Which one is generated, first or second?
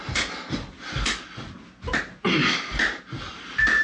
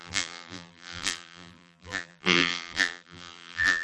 second